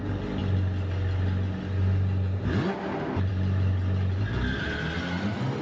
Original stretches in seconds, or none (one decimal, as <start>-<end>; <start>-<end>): 0.0-5.6